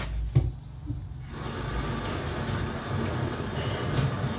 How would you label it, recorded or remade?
recorded